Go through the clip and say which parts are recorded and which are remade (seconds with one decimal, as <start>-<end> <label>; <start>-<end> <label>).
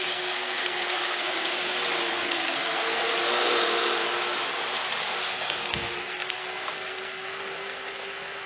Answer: 0.0-1.3 remade; 1.3-2.1 recorded; 2.1-3.0 remade; 3.0-5.2 recorded; 5.2-8.5 remade